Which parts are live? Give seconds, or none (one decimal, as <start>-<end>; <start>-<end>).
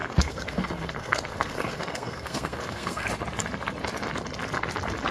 3.1-5.1